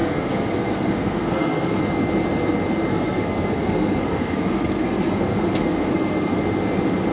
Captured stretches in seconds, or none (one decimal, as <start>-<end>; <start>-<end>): 1.8-2.9; 6.4-7.1